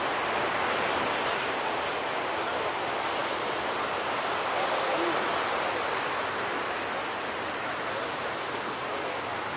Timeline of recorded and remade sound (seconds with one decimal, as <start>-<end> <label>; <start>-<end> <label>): 0.0-9.6 recorded